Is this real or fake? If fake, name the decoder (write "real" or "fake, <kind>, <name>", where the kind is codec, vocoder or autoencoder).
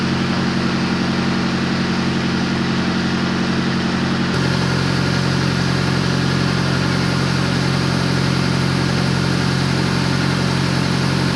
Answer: real